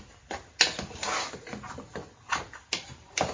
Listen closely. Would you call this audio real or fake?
real